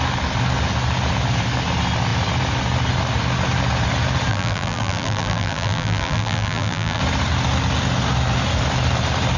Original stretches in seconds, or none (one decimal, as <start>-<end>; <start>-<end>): 0.0-4.3; 7.0-9.4